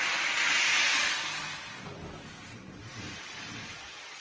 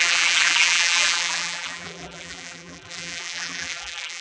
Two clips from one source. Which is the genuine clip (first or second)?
first